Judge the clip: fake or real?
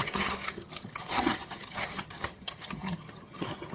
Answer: fake